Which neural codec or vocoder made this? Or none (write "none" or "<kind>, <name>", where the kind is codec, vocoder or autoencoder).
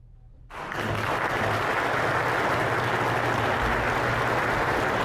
none